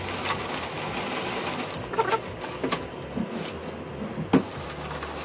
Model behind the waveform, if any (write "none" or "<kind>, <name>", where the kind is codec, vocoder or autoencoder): none